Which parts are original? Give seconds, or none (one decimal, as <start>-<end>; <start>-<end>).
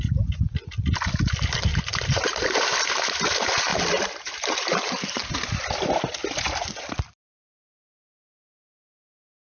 0.0-1.7; 2.3-3.7; 5.3-9.5